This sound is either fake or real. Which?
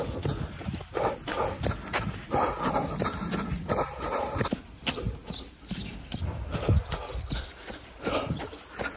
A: real